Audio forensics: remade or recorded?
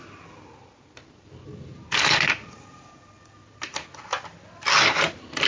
recorded